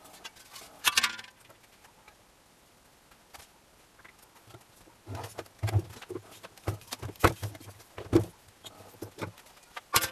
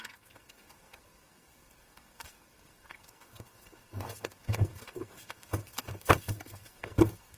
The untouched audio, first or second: first